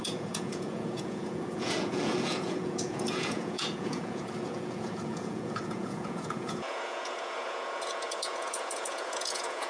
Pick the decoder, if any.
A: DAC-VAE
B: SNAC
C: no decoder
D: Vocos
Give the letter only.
D